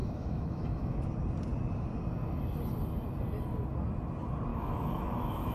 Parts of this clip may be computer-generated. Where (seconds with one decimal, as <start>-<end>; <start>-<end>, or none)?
0.0-1.0; 4.5-5.5